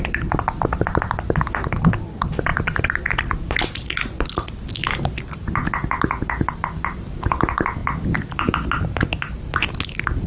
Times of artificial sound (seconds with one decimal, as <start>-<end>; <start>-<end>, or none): none